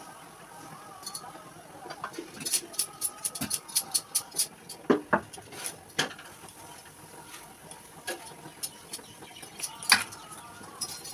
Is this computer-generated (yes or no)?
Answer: no